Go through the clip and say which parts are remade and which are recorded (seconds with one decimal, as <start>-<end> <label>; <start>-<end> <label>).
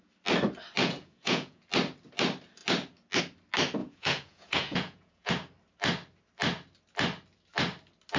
0.0-0.8 recorded; 0.8-1.6 remade; 1.6-3.8 recorded; 3.8-5.3 remade; 5.3-8.2 recorded